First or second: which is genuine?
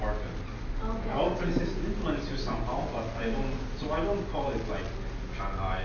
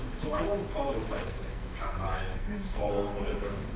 first